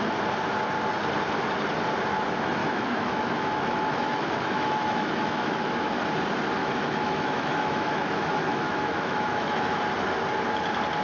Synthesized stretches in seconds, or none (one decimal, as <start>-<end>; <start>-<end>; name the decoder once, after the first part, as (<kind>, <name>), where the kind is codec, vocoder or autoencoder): 2.6-6.0 (autoencoder, DAC-VAE); 6.6-9.8